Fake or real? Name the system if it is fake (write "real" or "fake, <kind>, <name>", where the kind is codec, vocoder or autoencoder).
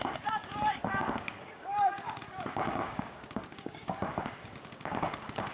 fake, codec, DAC